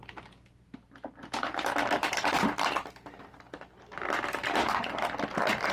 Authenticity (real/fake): real